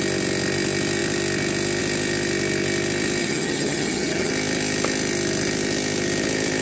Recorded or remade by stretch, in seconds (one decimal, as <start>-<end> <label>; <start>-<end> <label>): 0.0-3.2 recorded; 3.2-4.3 remade; 4.3-6.6 recorded

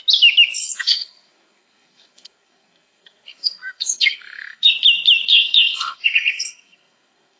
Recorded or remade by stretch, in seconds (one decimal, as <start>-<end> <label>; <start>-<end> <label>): 0.0-0.6 recorded; 0.6-4.7 remade; 4.7-5.3 recorded; 5.3-7.4 remade

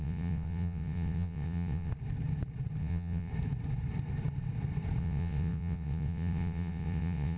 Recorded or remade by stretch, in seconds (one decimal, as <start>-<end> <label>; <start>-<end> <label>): 0.0-1.9 remade; 1.9-2.8 recorded; 2.8-3.3 remade; 3.3-5.0 recorded; 5.0-7.4 remade

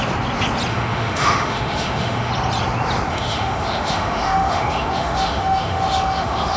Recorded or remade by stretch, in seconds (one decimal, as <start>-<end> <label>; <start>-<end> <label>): 0.0-0.7 recorded; 0.7-2.3 remade; 2.3-3.1 recorded; 3.1-6.6 remade

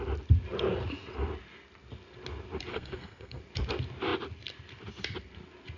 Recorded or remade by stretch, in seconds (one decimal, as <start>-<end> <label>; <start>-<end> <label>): 0.0-2.7 recorded; 2.7-3.4 remade; 3.4-5.8 recorded

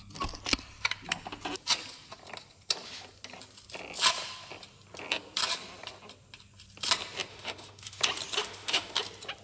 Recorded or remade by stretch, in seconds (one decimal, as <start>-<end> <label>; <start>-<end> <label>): 0.0-7.3 recorded; 7.3-8.0 remade; 8.0-8.4 recorded; 8.4-9.0 remade; 9.0-9.4 recorded